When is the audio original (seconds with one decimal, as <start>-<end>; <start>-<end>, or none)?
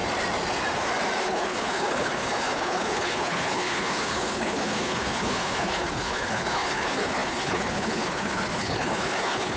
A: 0.0-1.2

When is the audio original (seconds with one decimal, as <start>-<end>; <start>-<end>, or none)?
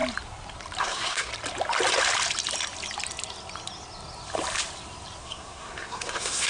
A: 0.0-0.8; 1.3-5.2